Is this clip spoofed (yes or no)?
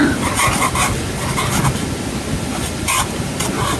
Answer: no